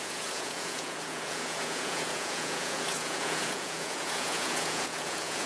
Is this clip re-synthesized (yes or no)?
yes